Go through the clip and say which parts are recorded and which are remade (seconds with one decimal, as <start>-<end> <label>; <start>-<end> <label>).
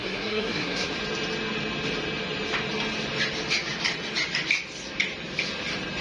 0.0-0.9 remade; 0.9-6.0 recorded